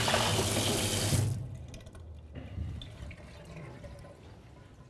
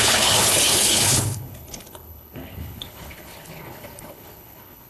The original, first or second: first